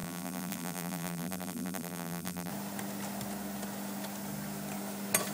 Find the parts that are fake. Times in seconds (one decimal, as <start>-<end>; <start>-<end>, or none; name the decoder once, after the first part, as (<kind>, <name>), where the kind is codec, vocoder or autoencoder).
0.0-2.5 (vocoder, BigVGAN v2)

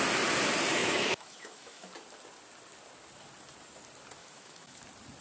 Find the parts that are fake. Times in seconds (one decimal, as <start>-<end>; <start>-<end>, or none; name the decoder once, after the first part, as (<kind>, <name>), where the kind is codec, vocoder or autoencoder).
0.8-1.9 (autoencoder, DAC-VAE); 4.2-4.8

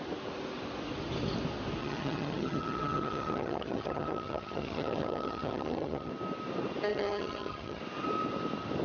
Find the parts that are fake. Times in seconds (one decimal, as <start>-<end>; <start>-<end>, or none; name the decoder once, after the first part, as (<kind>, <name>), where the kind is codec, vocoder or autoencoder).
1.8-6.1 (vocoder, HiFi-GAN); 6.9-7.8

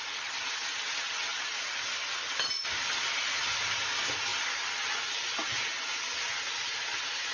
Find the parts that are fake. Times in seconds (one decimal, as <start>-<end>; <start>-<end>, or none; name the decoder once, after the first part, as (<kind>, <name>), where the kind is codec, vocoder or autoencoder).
none